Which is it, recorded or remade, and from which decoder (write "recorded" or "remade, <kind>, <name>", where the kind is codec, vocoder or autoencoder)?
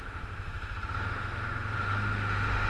remade, autoencoder, DAC-VAE